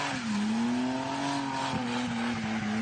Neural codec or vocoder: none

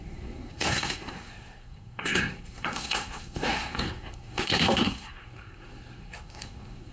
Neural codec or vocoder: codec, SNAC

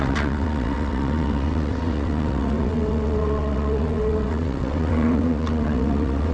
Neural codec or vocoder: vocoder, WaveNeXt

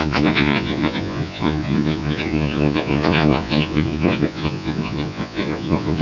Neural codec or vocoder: vocoder, Vocos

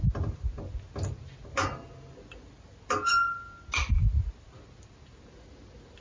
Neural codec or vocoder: none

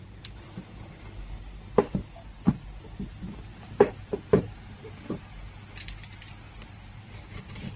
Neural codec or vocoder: none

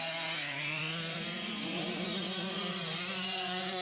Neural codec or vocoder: vocoder, Vocos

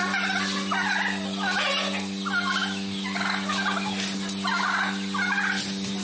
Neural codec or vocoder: none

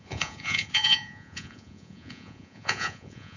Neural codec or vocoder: vocoder, Vocos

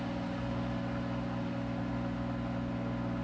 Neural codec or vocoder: none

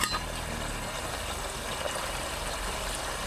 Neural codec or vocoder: none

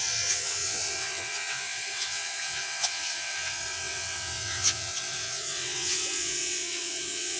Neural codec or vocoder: vocoder, WaveNeXt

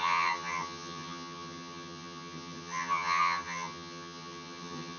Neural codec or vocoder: vocoder, HiFi-GAN